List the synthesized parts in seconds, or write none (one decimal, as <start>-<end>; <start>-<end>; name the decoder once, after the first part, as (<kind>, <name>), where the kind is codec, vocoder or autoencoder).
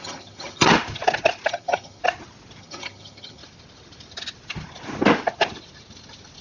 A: 0.0-0.7 (vocoder, HiFi-GAN); 1.5-2.0; 2.6-3.4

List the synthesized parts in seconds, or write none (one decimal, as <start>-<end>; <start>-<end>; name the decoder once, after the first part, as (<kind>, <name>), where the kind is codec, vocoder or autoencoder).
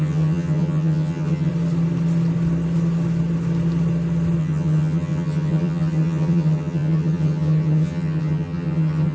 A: 0.0-1.5 (vocoder, HiFi-GAN); 4.4-9.1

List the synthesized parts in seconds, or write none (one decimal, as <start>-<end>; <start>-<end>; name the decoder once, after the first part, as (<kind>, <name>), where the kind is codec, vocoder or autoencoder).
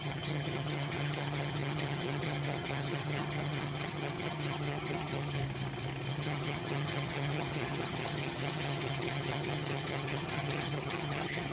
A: 0.0-5.4 (vocoder, HiFi-GAN); 6.1-11.5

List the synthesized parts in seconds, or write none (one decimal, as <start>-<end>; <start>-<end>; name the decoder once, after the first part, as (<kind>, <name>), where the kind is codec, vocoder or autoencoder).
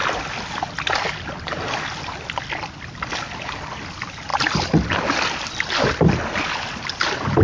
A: none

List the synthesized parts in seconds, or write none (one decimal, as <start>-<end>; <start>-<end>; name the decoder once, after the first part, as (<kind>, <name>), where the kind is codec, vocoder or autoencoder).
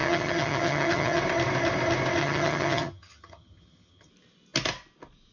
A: 0.0-1.2 (vocoder, HiFi-GAN); 2.2-4.1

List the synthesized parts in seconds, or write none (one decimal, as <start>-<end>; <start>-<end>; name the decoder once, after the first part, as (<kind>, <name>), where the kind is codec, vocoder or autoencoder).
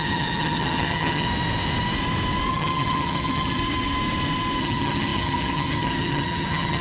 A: 0.0-1.3 (vocoder, HiFi-GAN); 2.5-3.6; 4.6-6.8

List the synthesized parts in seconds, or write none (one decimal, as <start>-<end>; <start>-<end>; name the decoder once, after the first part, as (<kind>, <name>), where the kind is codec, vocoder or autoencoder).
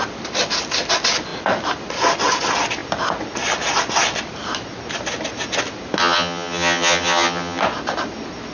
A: 6.0-7.6 (vocoder, HiFi-GAN)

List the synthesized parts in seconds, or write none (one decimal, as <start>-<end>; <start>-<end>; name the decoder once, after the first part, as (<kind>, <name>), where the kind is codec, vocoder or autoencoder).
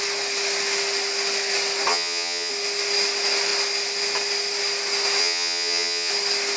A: 1.9-2.5 (vocoder, HiFi-GAN); 5.2-6.1